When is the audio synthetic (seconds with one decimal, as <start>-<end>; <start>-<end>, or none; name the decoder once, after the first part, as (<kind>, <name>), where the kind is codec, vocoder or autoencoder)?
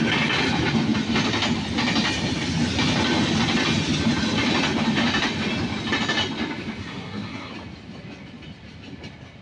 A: 6.8-7.5 (codec, SNAC)